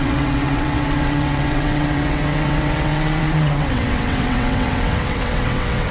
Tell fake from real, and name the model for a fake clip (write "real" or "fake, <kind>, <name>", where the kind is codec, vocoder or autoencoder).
fake, vocoder, WaveNeXt